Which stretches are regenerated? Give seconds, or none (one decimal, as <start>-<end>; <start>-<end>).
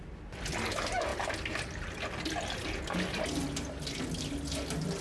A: none